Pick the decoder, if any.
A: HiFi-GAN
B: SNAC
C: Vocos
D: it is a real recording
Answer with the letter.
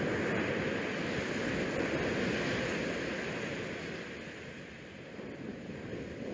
D